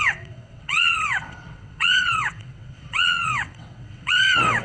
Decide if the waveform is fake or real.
fake